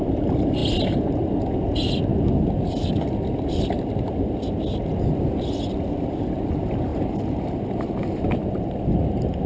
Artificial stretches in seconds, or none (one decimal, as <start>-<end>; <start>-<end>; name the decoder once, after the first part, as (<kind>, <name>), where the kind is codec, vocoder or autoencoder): none

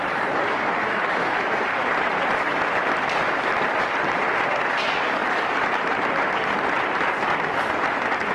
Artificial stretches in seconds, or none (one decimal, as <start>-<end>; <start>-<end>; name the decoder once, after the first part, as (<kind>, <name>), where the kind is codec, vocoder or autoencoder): 0.0-1.8 (codec, DAC); 4.7-5.2